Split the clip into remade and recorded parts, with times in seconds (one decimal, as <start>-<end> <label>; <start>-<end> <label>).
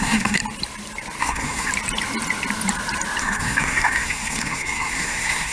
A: 0.0-0.4 remade; 0.4-1.2 recorded; 1.2-1.7 remade; 1.7-3.2 recorded; 3.2-5.5 remade